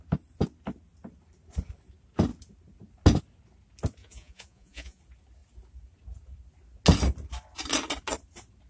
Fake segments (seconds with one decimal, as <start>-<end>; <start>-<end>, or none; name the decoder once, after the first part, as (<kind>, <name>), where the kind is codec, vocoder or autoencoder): 4.0-5.0 (vocoder, Vocos)